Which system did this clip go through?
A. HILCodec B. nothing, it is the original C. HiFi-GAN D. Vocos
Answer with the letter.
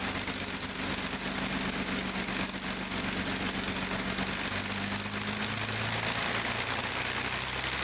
B